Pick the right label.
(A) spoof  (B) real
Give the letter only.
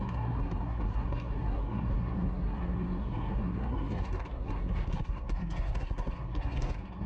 A